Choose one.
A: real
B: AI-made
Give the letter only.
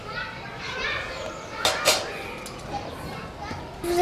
A